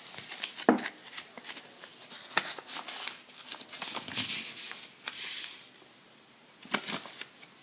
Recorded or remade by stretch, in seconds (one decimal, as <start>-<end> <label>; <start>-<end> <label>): 0.0-7.6 recorded